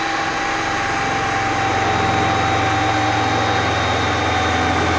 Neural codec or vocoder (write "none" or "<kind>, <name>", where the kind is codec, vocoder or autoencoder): none